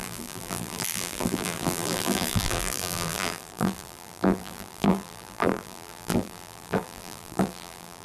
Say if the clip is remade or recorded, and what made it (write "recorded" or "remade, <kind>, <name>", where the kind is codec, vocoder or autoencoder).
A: remade, vocoder, BigVGAN v2